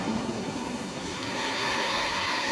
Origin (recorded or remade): remade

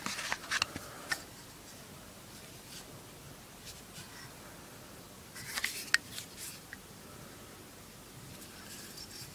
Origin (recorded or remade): recorded